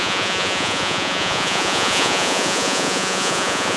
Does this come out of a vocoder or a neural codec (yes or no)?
yes